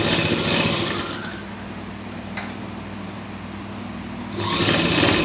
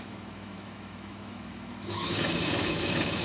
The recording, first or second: first